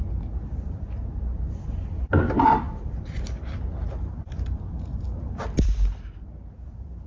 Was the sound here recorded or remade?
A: recorded